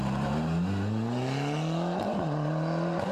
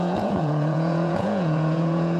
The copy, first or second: second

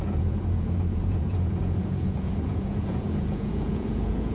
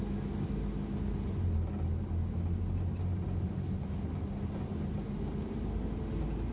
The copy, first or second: first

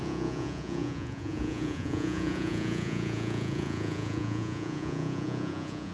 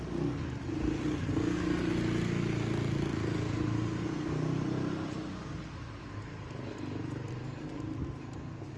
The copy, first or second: first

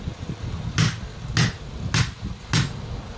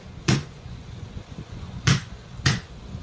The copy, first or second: second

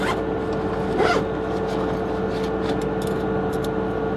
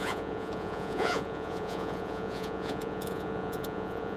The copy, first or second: second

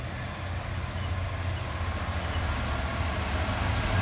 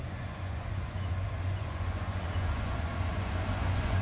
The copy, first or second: second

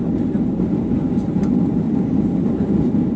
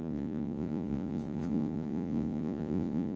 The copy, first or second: second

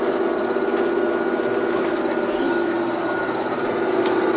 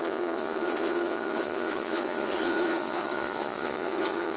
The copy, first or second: second